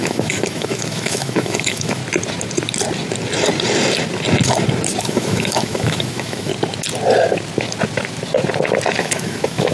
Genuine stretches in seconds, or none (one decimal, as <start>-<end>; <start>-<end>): 2.0-5.0; 6.5-9.0